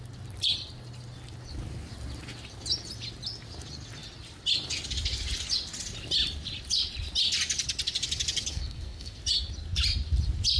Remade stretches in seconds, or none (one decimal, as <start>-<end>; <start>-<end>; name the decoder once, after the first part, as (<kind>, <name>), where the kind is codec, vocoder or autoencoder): 8.5-9.2 (codec, SNAC)